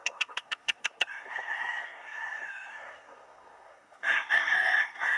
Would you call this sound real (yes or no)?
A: no